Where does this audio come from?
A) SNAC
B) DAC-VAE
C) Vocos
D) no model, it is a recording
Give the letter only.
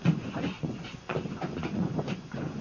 C